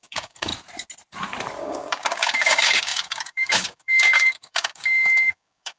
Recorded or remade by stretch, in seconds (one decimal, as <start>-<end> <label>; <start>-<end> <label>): 0.0-0.5 remade; 0.5-1.6 recorded; 1.6-5.8 remade